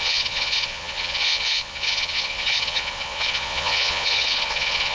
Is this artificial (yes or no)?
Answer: yes